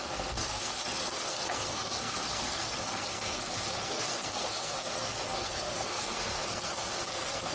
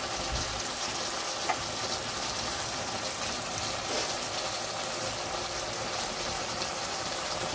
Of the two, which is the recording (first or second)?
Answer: second